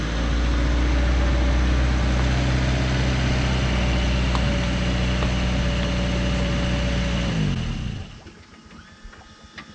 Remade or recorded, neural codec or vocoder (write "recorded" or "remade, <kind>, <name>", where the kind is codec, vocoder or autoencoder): recorded